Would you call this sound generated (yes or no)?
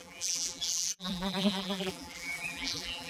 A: yes